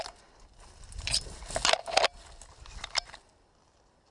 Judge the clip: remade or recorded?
recorded